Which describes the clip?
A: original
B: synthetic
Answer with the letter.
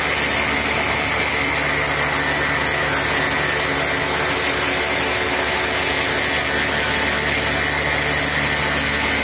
A